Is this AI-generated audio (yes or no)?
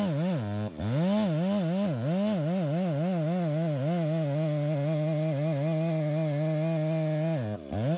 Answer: no